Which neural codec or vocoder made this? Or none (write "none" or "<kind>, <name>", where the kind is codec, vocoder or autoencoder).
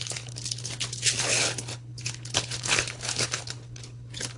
codec, HILCodec